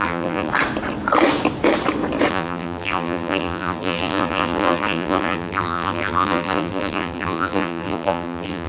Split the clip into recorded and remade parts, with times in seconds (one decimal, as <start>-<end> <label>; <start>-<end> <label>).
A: 0.0-0.5 remade; 0.5-2.3 recorded; 2.3-8.7 remade

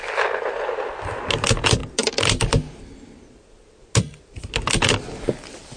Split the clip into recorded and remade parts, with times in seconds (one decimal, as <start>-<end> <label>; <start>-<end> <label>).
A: 0.0-5.8 recorded